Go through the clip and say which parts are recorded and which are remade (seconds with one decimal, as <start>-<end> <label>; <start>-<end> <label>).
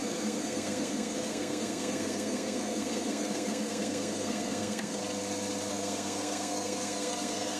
0.0-5.0 remade; 5.0-5.7 recorded; 5.7-7.6 remade